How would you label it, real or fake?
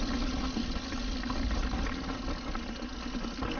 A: real